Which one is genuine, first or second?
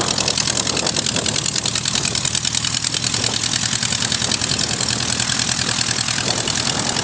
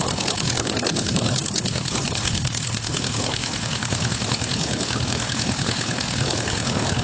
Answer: first